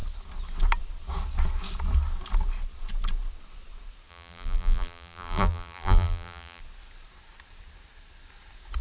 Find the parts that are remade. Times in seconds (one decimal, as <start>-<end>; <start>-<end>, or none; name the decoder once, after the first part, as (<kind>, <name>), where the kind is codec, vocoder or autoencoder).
4.1-6.6 (vocoder, BigVGAN v2)